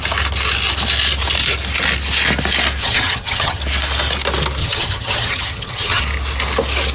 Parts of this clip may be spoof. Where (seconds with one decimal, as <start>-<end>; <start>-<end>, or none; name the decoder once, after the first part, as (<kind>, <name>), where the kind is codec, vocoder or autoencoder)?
2.8-3.6 (vocoder, HiFi-GAN); 4.6-6.0